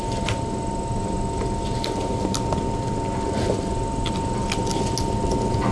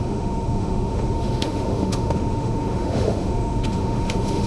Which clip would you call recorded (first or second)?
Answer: first